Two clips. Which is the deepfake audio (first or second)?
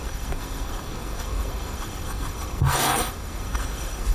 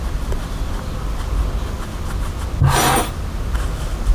first